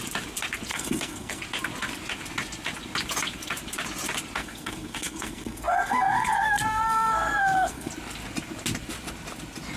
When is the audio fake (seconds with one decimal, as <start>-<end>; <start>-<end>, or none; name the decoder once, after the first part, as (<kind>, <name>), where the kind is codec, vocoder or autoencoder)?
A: 0.7-1.4 (codec, SNAC); 4.4-7.9